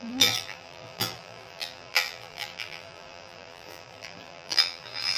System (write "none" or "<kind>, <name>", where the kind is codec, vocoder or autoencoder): vocoder, BigVGAN v2